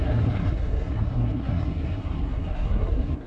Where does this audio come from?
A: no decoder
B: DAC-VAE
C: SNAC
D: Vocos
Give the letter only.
C